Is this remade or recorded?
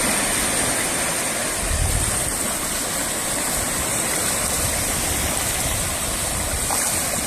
recorded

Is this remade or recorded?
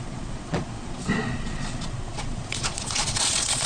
remade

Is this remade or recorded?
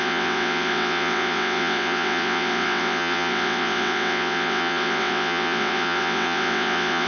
remade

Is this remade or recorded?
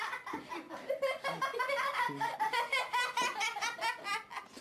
recorded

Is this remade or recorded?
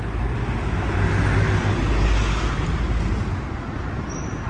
recorded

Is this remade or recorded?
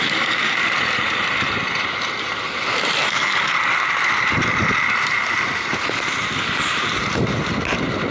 remade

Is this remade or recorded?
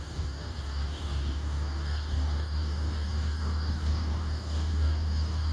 remade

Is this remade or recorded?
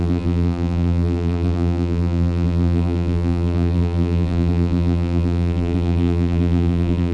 remade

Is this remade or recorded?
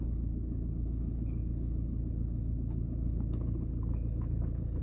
remade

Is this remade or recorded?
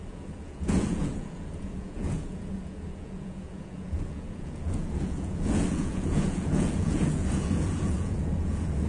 remade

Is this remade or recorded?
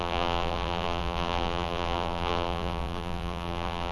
remade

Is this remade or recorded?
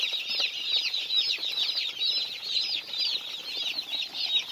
recorded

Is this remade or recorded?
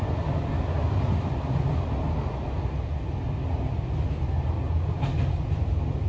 recorded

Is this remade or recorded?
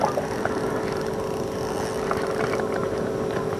recorded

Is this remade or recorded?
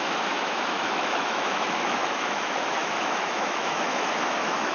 remade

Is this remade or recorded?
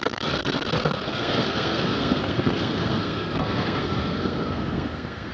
remade